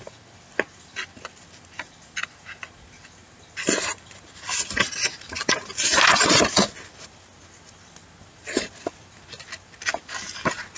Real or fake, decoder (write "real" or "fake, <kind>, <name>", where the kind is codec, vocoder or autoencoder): real